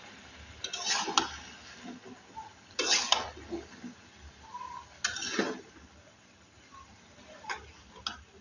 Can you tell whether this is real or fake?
real